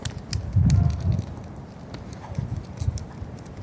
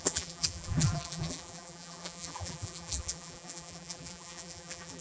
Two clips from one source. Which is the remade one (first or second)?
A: second